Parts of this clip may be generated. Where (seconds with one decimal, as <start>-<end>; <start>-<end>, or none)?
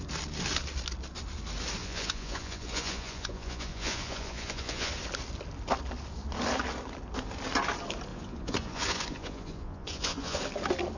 1.8-4.9; 8.1-10.4